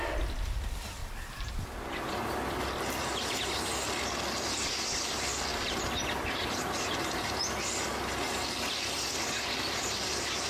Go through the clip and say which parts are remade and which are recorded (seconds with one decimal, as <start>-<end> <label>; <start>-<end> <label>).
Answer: 0.0-1.0 recorded; 1.0-1.5 remade; 1.5-5.5 recorded; 5.5-7.4 remade; 7.4-10.5 recorded